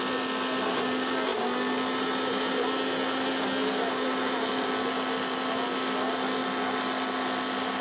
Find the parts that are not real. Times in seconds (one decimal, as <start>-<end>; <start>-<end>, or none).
none

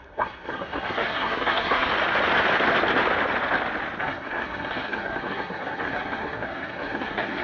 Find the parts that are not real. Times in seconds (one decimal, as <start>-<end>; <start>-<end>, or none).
0.0-1.9; 4.0-7.4

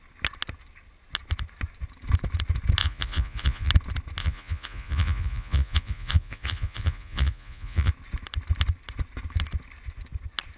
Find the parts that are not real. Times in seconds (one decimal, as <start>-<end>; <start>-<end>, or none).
2.8-3.7; 4.2-7.9

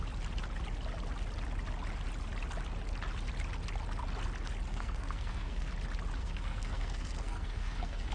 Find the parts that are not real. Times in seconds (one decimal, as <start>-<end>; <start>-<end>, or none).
4.7-5.7; 6.2-8.1

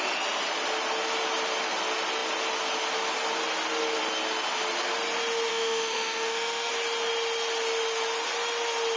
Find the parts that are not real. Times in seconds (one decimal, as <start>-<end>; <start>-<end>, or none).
5.5-6.7

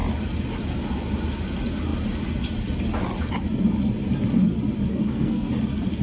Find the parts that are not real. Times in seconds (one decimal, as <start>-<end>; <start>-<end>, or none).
4.9-5.5

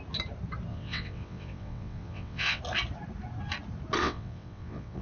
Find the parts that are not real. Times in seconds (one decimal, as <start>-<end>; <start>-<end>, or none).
0.7-2.6; 4.0-5.0

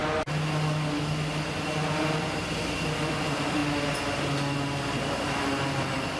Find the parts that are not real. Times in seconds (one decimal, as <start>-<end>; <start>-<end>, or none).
3.0-3.6; 5.7-6.2